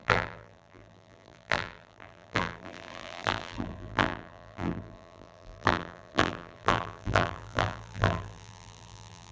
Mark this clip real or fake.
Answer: fake